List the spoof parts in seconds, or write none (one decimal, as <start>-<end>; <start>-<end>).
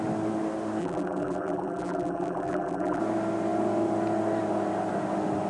0.8-3.0